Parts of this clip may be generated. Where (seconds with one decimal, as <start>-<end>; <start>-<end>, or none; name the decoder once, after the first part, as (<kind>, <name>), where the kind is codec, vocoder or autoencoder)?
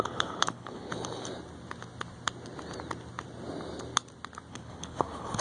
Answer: 0.0-1.3 (codec, HILCodec); 4.5-5.4